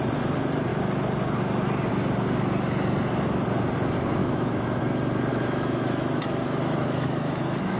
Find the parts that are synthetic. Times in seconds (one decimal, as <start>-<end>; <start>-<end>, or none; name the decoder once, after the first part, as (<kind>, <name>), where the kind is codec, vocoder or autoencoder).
4.2-4.8 (autoencoder, DAC-VAE); 5.3-7.8